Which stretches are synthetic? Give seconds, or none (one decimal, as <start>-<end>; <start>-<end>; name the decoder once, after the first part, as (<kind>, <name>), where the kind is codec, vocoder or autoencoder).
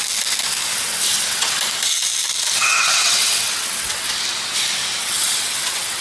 0.7-1.6 (vocoder, WaveNeXt); 2.6-4.1; 5.0-6.0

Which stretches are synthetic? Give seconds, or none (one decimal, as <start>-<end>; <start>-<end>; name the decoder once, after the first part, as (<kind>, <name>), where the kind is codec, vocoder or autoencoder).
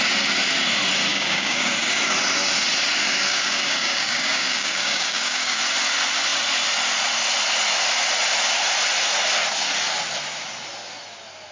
1.1-2.0 (codec, DAC); 3.3-5.6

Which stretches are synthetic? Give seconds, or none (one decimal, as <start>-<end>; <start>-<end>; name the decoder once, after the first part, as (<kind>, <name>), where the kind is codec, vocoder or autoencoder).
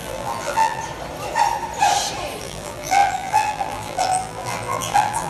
0.0-0.8 (vocoder, BigVGAN v2); 2.4-5.3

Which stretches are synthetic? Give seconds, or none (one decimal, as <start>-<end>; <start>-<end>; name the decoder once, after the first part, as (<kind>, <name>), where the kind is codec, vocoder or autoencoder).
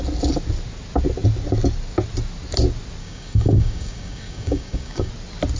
3.0-5.1 (codec, DAC)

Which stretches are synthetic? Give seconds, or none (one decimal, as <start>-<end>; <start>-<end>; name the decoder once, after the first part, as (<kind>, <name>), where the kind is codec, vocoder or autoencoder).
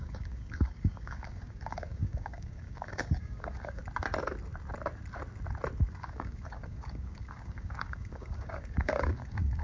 0.0-3.8 (codec, DAC); 5.9-9.6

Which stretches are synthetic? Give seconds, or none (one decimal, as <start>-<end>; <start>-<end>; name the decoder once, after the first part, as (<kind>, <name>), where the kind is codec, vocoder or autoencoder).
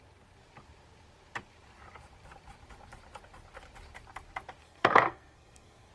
4.6-5.9 (codec, SNAC)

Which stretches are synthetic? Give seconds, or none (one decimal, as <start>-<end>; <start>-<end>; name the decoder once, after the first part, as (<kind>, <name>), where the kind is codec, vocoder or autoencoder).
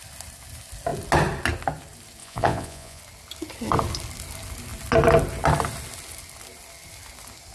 2.2-3.0 (vocoder, Vocos)